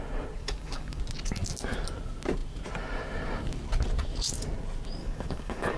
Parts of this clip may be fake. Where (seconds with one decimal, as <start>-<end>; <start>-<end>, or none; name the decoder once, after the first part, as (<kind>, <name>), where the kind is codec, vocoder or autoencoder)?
0.4-1.0 (codec, DAC); 5.0-5.8